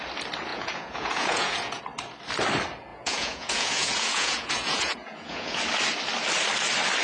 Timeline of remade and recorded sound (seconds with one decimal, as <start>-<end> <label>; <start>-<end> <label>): 0.0-0.5 recorded; 0.5-1.8 remade; 1.8-2.9 recorded; 2.9-5.6 remade; 5.6-7.0 recorded